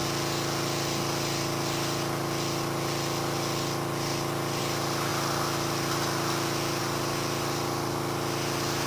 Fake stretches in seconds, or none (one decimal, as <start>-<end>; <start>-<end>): none